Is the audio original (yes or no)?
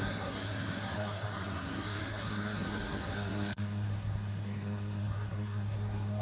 no